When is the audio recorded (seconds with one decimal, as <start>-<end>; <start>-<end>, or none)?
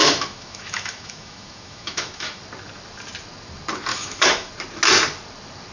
2.4-3.9; 4.5-5.7